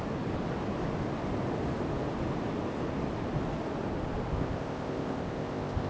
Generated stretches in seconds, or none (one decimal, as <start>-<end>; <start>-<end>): 4.3-5.9

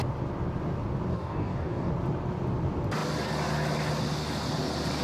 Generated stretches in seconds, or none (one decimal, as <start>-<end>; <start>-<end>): 1.1-1.9

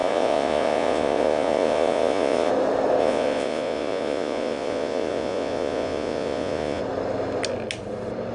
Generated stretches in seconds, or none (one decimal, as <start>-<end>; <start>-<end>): 0.0-2.5; 3.0-6.8

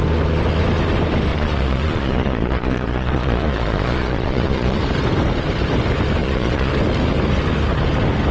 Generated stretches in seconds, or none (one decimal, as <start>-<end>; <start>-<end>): 1.3-4.8; 6.2-6.7

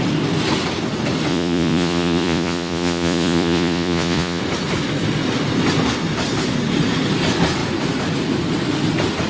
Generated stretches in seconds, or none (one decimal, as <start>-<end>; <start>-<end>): 1.3-4.4